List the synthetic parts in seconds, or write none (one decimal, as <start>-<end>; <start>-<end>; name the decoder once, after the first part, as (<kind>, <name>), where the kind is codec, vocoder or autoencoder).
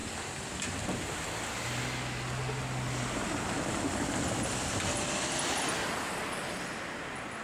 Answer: none